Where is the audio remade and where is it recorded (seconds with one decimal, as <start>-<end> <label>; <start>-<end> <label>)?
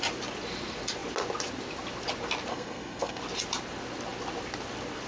0.0-2.5 recorded; 2.5-3.2 remade; 3.2-5.1 recorded